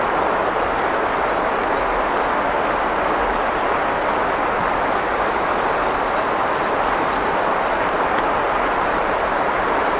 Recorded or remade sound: recorded